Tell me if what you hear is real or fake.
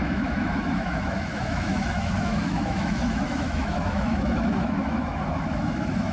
fake